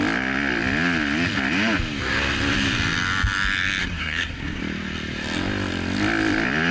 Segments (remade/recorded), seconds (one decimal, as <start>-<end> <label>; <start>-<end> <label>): 0.0-3.8 recorded; 3.8-4.6 remade; 4.6-6.7 recorded